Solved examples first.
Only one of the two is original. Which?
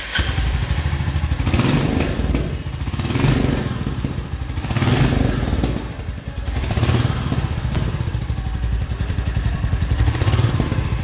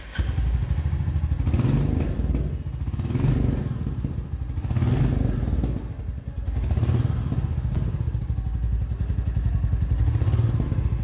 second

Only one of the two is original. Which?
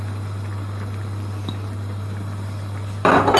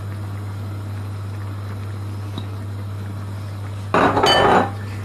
second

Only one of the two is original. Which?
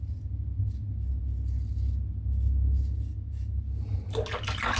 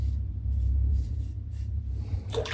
first